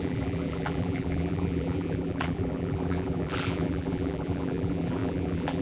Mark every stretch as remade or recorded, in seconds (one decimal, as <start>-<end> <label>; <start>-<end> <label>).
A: 0.0-5.6 remade